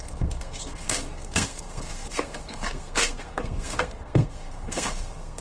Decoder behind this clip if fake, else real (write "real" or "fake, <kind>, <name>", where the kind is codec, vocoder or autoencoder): fake, codec, SNAC